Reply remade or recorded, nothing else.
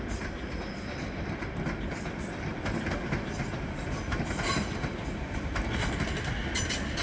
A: recorded